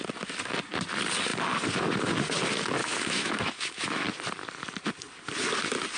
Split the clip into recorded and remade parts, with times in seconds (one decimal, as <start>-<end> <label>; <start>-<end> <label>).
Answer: 0.0-2.8 recorded; 2.8-4.0 remade; 4.0-6.0 recorded